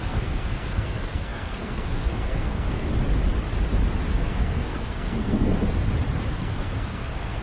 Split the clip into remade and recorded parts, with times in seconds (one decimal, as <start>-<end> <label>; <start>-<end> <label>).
0.0-2.9 remade; 2.9-4.1 recorded; 4.1-5.5 remade; 5.5-6.3 recorded; 6.3-7.4 remade